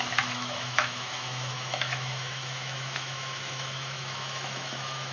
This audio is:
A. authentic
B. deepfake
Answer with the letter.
B